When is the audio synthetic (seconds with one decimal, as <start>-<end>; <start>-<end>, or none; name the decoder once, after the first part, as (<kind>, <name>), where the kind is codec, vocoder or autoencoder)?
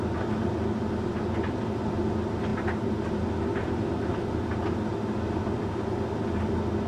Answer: none